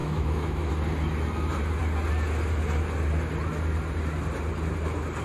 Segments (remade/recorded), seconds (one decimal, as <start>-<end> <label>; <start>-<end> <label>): 0.0-0.7 remade; 0.7-5.2 recorded